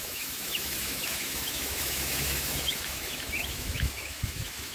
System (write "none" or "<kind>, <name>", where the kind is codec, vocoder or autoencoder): autoencoder, DAC-VAE